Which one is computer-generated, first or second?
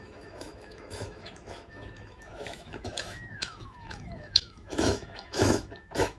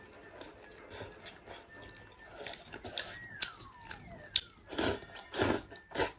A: first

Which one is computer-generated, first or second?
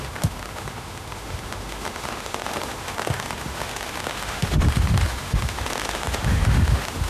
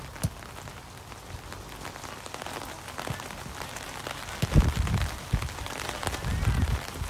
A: first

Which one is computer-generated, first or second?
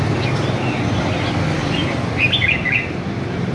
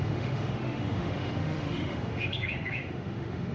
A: second